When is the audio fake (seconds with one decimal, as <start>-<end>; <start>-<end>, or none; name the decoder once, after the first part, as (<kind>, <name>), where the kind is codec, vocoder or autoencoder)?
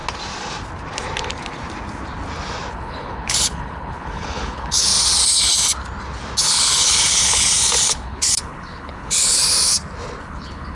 2.7-4.9 (codec, HILCodec); 6.4-9.4; 10.2-10.8